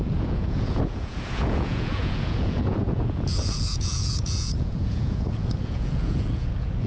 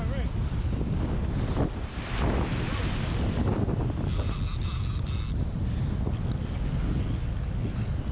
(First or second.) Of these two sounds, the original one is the second